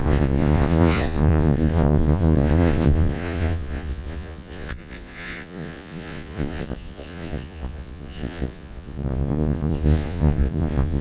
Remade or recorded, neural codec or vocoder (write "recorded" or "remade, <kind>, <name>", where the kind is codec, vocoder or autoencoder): remade, vocoder, Vocos